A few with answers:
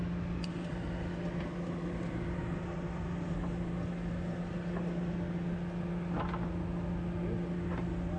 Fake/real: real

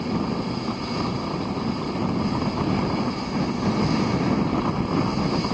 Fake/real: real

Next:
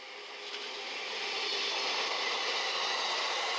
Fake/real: real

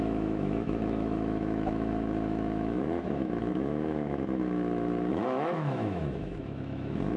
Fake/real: fake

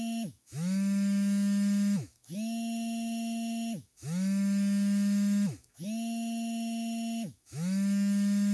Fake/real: fake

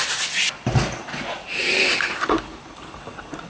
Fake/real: real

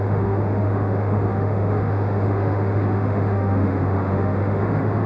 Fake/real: fake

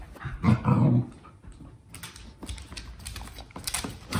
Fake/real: real